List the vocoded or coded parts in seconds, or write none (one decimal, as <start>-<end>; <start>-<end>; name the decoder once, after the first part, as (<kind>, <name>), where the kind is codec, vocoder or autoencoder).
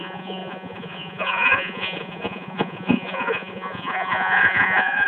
0.0-5.1 (vocoder, Vocos)